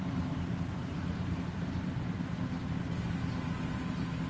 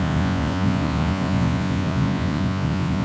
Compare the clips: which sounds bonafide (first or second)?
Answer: first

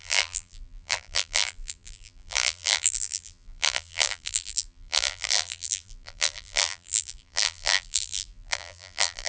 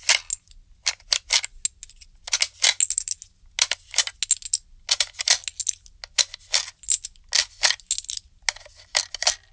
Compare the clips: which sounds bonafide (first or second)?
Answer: second